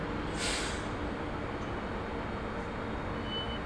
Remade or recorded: recorded